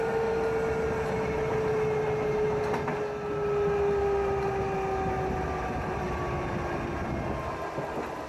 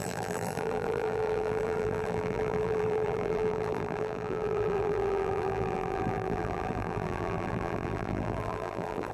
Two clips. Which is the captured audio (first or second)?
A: first